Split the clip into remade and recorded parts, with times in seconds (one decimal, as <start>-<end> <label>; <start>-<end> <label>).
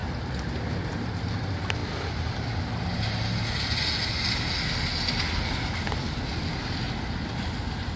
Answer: 0.0-8.0 recorded